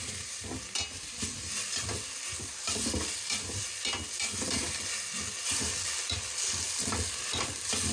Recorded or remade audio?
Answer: recorded